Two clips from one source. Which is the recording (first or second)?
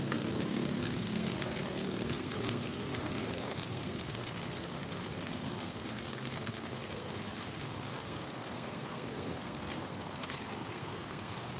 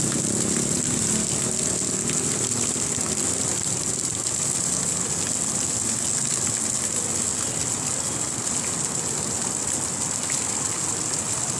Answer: second